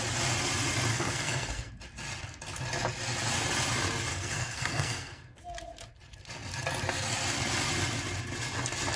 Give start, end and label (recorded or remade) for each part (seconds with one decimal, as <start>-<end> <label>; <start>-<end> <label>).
0.0-0.9 recorded; 0.9-1.7 remade; 1.7-4.1 recorded; 4.1-5.4 remade; 5.4-9.0 recorded